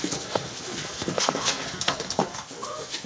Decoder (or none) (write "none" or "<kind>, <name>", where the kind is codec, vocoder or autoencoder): codec, SNAC